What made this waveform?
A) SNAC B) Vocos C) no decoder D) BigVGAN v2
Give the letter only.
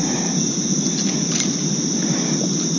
C